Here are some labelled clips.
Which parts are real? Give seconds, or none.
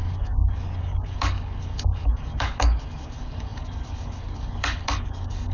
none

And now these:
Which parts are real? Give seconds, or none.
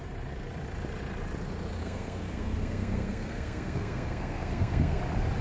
0.0-1.8; 5.0-5.4